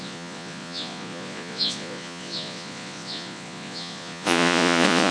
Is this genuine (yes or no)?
no